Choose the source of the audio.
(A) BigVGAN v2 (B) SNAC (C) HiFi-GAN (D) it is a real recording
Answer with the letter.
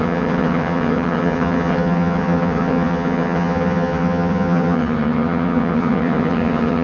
C